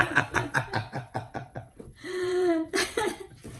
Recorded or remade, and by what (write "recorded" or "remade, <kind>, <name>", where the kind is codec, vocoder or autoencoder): remade, vocoder, WaveNeXt